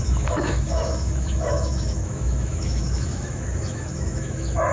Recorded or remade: remade